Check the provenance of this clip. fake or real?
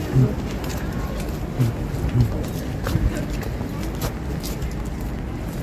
real